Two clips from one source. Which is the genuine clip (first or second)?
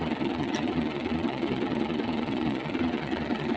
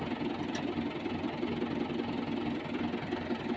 second